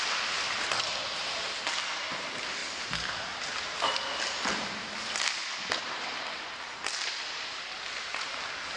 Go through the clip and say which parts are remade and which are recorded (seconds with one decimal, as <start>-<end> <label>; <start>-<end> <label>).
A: 0.0-0.9 remade; 0.9-2.2 recorded; 2.2-2.6 remade; 2.6-5.8 recorded; 5.8-8.8 remade